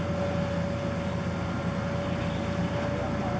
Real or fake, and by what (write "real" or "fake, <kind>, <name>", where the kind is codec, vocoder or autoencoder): real